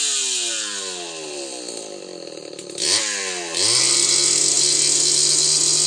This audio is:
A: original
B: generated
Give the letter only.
A